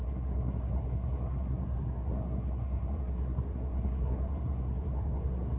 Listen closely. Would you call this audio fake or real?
fake